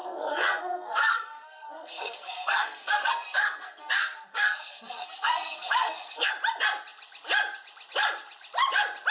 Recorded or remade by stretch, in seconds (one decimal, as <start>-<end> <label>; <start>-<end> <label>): 0.0-3.8 remade; 3.8-4.3 recorded; 4.3-6.3 remade; 6.3-9.1 recorded